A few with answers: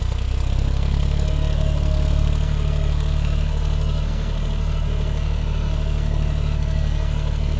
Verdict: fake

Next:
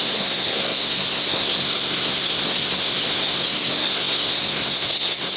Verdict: fake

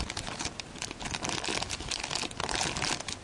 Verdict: real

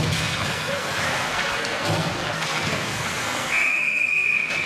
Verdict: fake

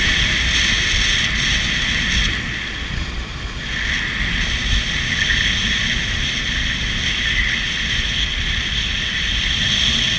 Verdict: real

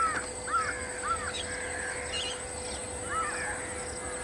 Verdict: real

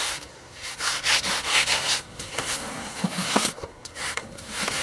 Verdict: fake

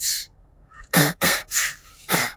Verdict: fake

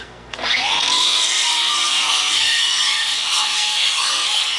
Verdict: fake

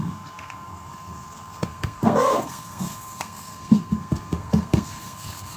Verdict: fake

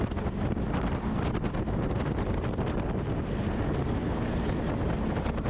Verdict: real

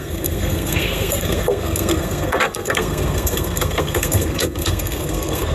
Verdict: fake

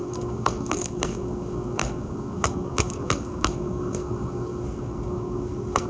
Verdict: fake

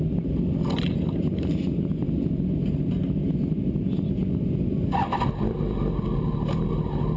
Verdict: real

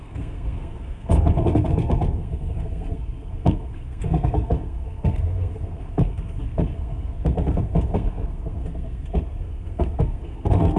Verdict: fake